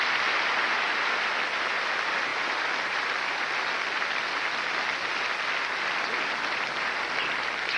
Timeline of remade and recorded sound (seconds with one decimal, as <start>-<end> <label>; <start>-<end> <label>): 0.0-7.8 recorded